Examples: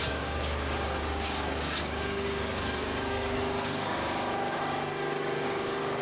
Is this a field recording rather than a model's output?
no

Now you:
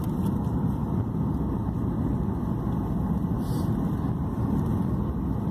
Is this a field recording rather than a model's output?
yes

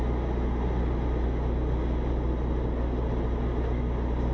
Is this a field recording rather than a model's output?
yes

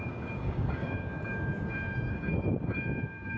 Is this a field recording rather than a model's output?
no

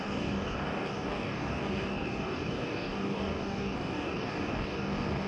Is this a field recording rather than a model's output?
no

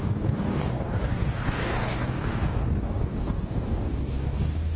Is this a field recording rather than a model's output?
no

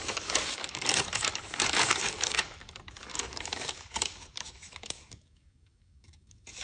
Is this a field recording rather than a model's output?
no